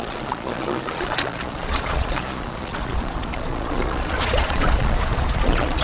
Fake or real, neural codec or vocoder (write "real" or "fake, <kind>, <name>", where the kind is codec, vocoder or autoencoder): fake, vocoder, Vocos